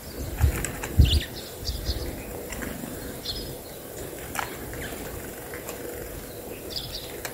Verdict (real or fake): real